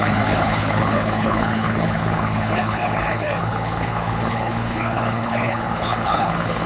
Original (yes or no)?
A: no